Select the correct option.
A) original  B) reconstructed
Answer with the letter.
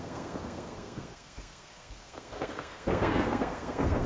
B